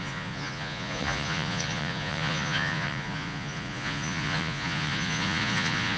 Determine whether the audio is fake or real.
fake